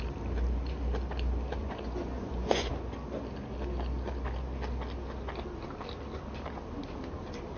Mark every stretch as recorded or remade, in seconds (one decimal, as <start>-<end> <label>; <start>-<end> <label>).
0.0-1.6 recorded; 1.6-2.7 remade; 2.7-7.6 recorded